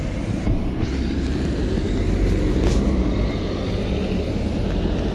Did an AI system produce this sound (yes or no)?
no